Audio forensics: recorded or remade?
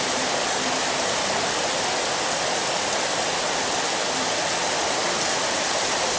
recorded